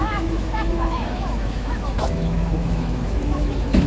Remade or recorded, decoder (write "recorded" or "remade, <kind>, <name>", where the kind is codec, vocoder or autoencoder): remade, autoencoder, DAC-VAE